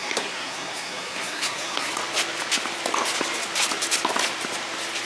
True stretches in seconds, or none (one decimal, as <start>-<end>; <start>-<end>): 1.9-5.0